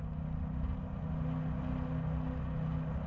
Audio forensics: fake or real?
real